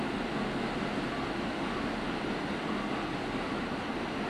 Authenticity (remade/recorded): recorded